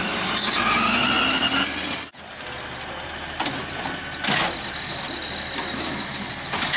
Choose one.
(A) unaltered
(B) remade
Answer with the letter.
A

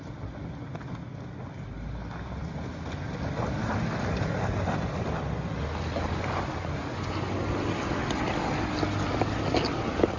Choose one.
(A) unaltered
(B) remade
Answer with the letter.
A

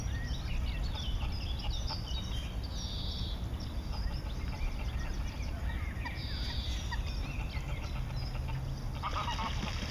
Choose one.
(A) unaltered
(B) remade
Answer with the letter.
A